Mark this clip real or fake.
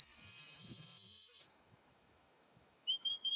fake